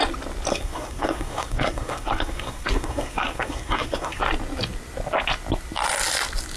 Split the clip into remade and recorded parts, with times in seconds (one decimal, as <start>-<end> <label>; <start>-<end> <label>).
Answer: 0.0-0.5 recorded; 0.5-4.2 remade; 4.2-6.6 recorded